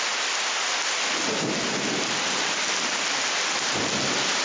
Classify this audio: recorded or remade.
recorded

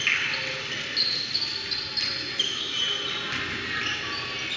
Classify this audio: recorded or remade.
recorded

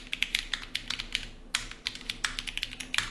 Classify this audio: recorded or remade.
recorded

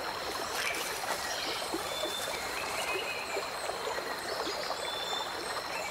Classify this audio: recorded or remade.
recorded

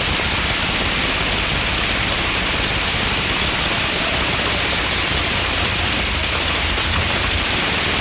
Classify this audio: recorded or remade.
recorded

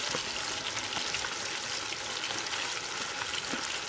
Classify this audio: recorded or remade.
recorded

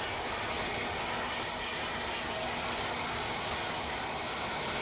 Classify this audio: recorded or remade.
recorded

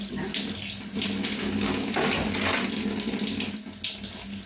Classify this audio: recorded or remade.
recorded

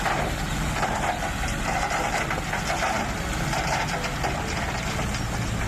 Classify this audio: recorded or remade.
recorded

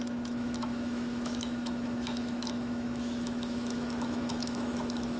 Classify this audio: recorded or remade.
remade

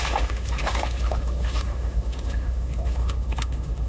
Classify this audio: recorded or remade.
remade